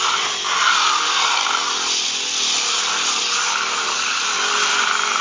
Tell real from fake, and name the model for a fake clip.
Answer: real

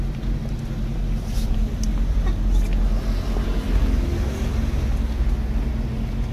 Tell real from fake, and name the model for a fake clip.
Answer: real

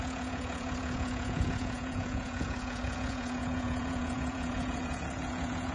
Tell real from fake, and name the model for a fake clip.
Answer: fake, vocoder, Vocos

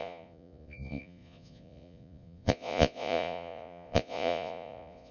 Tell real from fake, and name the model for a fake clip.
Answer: fake, vocoder, Vocos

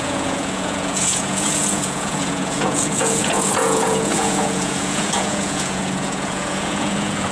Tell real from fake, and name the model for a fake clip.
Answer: fake, vocoder, Vocos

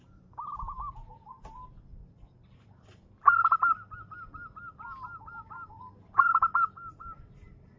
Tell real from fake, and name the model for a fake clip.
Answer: real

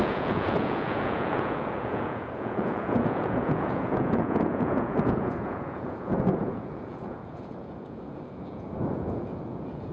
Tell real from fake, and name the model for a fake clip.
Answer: fake, vocoder, Vocos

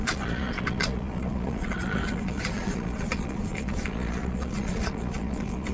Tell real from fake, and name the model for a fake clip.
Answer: fake, vocoder, Vocos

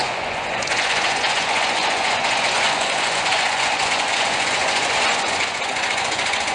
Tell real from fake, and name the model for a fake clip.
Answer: fake, vocoder, Vocos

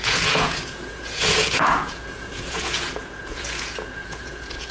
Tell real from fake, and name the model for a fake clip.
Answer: fake, vocoder, Vocos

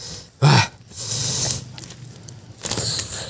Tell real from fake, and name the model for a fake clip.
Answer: real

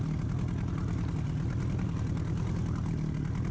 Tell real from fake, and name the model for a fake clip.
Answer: real